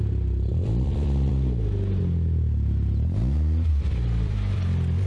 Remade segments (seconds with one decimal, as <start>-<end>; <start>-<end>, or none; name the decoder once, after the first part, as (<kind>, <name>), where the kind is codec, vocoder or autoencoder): 0.5-1.3 (vocoder, BigVGAN v2); 3.7-5.1